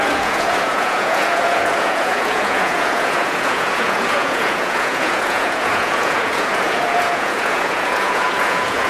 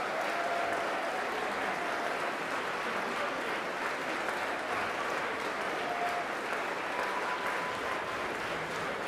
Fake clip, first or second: first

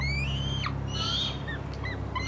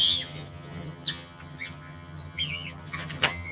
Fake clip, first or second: second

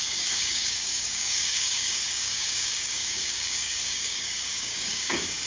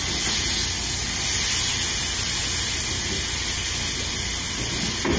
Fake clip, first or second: first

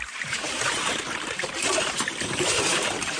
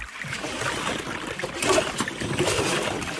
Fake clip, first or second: first